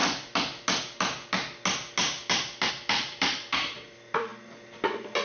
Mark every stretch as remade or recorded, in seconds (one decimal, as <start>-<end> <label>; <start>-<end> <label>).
0.0-2.7 recorded; 2.7-4.3 remade; 4.3-5.2 recorded